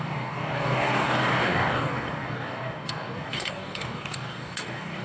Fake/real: fake